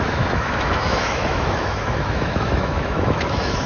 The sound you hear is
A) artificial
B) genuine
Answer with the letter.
A